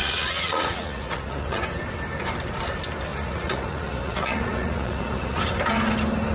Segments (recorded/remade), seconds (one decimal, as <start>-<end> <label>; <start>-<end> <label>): 0.0-1.6 remade; 1.6-3.1 recorded; 3.1-5.4 remade; 5.4-6.3 recorded